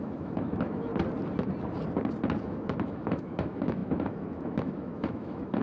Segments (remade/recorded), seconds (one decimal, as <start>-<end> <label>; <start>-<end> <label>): 0.0-0.9 remade; 0.9-2.4 recorded; 2.4-5.6 remade